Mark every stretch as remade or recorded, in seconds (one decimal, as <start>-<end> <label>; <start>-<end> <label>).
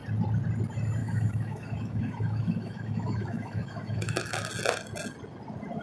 0.0-1.0 recorded; 1.0-4.5 remade; 4.5-5.8 recorded